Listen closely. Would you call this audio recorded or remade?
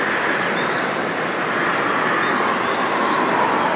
recorded